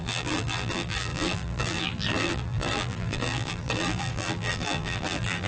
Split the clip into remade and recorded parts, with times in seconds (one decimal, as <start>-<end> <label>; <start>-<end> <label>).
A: 0.0-5.5 remade

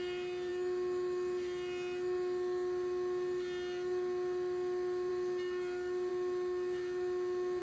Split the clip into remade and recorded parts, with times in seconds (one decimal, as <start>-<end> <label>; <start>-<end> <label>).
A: 0.0-6.1 recorded; 6.1-7.6 remade

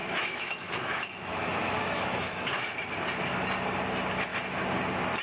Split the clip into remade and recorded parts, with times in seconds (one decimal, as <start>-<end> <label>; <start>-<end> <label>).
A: 0.0-2.7 remade; 2.7-5.2 recorded

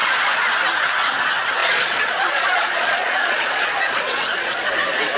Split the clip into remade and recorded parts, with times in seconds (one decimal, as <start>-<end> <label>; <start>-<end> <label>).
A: 0.0-0.5 remade; 0.5-1.6 recorded; 1.6-4.7 remade; 4.7-5.2 recorded

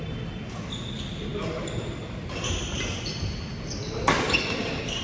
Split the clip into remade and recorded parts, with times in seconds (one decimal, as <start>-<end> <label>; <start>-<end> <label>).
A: 0.0-5.0 recorded